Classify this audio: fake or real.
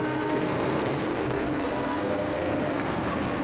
fake